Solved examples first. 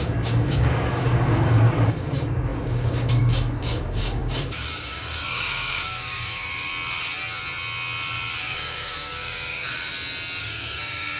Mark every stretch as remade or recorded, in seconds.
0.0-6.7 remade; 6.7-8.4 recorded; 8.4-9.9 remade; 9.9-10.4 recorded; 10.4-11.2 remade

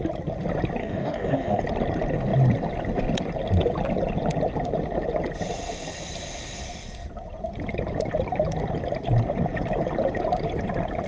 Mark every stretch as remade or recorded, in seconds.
0.0-0.8 recorded; 0.8-1.6 remade; 1.6-11.1 recorded

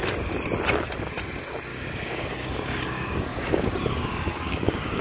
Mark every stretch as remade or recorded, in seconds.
0.0-1.7 recorded; 1.7-5.0 remade

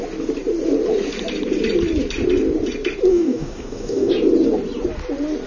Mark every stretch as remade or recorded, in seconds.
0.0-3.1 recorded; 3.1-4.1 remade; 4.1-5.5 recorded

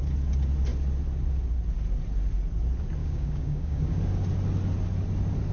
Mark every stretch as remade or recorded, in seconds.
0.0-3.0 recorded; 3.0-4.0 remade; 4.0-5.5 recorded

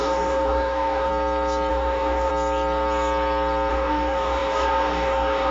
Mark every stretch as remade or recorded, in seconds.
0.0-1.1 remade; 1.1-1.7 recorded; 1.7-2.3 remade; 2.3-3.7 recorded; 3.7-5.5 remade